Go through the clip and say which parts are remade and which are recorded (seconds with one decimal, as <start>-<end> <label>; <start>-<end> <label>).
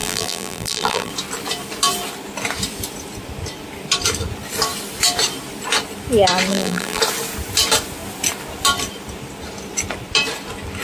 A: 0.0-1.1 remade; 1.1-6.5 recorded; 6.5-7.0 remade; 7.0-10.8 recorded